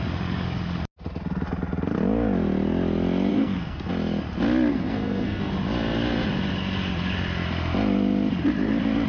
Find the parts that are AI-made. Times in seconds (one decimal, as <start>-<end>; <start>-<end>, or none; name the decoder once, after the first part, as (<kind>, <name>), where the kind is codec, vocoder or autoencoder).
3.3-3.9 (codec, SNAC); 4.7-5.5